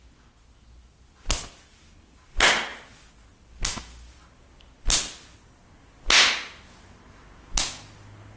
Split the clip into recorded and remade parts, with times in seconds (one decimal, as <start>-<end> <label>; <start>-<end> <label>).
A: 0.0-8.4 recorded